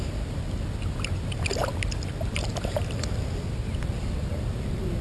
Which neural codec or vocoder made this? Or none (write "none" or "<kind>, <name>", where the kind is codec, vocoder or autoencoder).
none